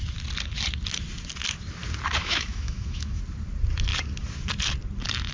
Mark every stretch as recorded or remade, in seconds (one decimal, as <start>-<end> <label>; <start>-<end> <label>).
0.0-2.2 recorded; 2.2-3.2 remade; 3.2-5.3 recorded